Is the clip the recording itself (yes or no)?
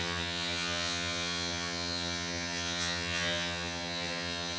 no